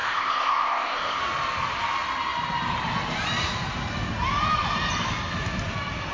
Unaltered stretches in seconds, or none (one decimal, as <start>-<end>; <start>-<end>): 1.2-6.1